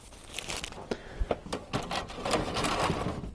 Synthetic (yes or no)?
no